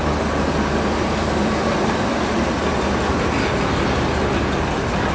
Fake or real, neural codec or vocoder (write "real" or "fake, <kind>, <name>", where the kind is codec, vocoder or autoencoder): real